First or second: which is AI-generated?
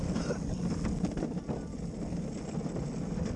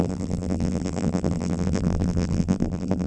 second